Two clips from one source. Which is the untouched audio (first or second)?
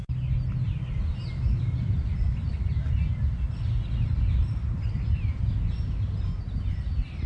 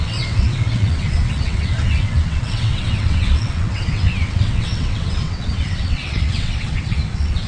first